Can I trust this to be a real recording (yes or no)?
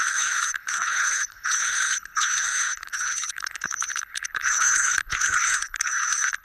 no